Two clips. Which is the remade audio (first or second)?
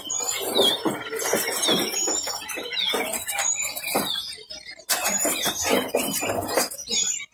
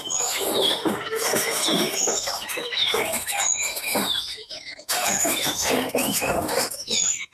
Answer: second